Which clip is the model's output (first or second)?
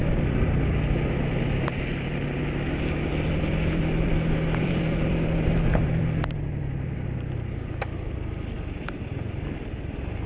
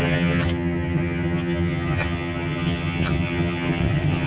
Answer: second